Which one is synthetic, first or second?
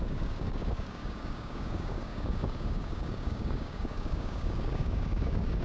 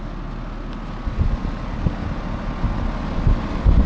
first